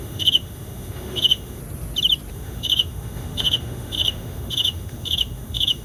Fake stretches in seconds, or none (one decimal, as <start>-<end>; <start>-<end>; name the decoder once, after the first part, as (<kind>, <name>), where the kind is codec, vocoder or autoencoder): 0.0-1.6 (autoencoder, DAC-VAE); 2.3-5.8